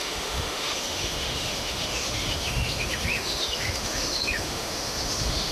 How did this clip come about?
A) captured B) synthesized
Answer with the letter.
B